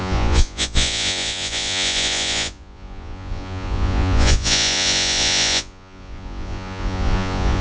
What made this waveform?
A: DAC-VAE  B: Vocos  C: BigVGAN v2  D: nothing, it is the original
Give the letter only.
B